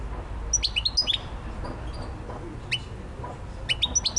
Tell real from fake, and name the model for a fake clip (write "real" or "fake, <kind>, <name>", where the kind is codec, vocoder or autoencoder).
real